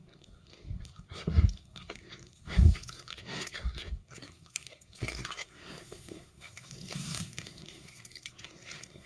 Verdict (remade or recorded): remade